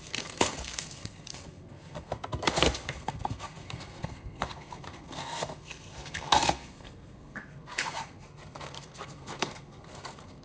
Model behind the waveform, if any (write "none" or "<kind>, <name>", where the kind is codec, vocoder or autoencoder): codec, SNAC